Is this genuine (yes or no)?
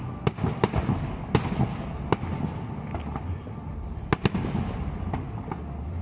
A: yes